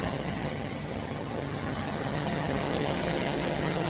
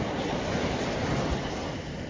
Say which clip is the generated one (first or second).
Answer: first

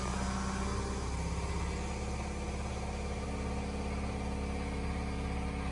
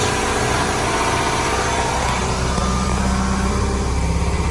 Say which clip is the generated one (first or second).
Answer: second